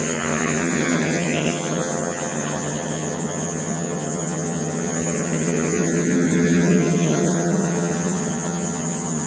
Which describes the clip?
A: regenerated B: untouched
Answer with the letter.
A